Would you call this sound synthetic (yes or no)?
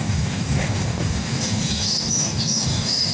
yes